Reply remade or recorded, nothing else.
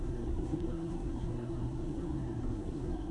remade